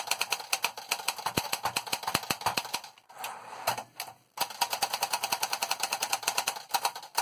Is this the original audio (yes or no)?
yes